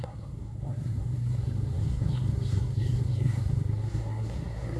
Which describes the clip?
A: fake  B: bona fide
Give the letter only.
A